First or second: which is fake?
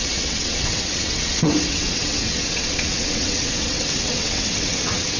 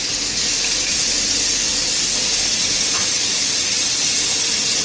first